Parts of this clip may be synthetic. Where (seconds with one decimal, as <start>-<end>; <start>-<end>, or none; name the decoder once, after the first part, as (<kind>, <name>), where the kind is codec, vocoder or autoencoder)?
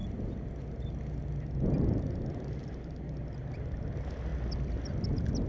none